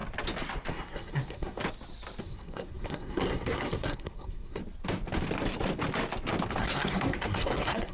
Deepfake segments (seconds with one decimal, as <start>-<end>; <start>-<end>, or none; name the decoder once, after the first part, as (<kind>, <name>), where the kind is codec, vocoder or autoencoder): 0.7-1.6 (codec, SNAC); 2.2-4.6; 6.6-7.9